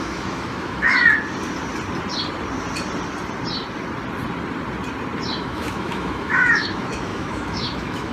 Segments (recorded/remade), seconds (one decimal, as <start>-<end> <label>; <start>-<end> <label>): 0.0-1.0 remade; 1.0-5.4 recorded; 5.4-8.1 remade